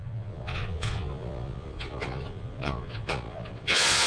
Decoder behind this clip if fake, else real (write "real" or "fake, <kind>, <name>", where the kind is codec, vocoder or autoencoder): fake, vocoder, Vocos